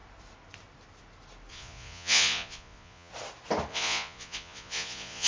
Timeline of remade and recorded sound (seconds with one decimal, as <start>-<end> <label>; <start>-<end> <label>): 0.0-1.5 recorded; 1.5-3.1 remade; 3.1-3.7 recorded; 3.7-5.3 remade